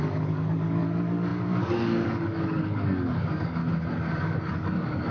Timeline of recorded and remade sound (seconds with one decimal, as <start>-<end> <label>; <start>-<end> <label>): 0.0-3.6 remade; 3.6-4.2 recorded; 4.2-5.1 remade